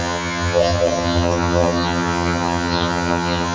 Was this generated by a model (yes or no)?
yes